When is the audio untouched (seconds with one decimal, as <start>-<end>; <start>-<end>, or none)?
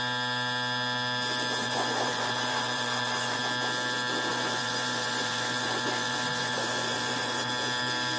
0.0-1.6; 3.4-4.3; 7.5-8.2